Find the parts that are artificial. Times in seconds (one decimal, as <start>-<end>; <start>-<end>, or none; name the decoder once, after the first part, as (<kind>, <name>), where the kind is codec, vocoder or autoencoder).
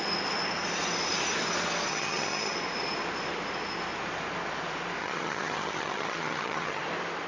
1.9-2.5 (vocoder, HiFi-GAN); 5.0-6.8